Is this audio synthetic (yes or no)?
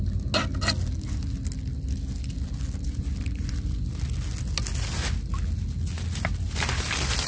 no